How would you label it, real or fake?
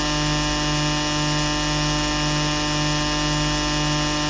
real